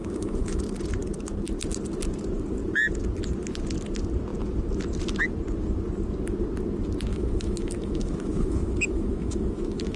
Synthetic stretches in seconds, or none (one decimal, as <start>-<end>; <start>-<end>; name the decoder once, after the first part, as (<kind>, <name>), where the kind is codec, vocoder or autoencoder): 0.0-0.6 (autoencoder, DAC-VAE); 7.1-10.0